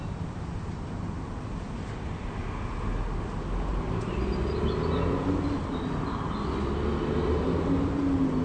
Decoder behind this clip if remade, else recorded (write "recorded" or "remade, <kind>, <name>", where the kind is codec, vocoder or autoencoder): recorded